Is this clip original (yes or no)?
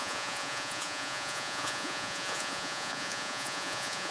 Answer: no